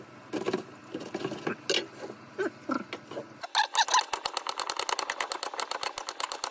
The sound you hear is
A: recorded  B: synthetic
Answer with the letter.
A